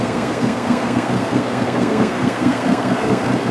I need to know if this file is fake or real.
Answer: fake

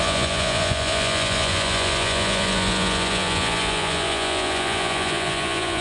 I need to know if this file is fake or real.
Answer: fake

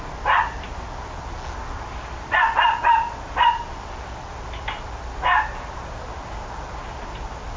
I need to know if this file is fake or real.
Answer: real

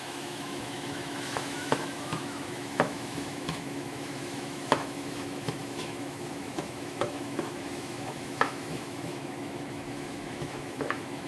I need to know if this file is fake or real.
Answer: fake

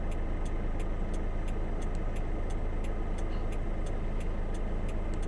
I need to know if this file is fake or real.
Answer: real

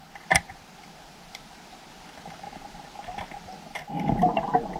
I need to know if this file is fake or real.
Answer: real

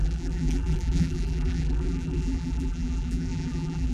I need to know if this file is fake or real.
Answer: fake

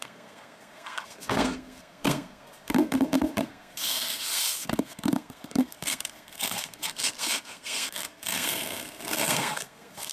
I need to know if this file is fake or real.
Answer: fake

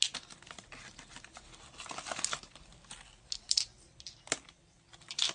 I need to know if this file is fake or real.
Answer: real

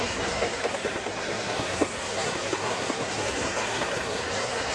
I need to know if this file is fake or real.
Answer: fake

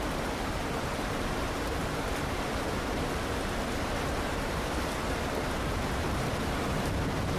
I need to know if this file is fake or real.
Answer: fake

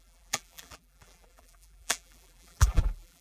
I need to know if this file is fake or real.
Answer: fake